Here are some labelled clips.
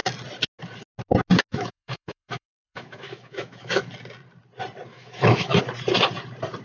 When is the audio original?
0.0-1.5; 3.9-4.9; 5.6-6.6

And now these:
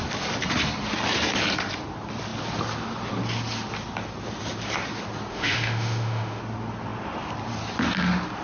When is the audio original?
0.0-5.3; 6.4-8.4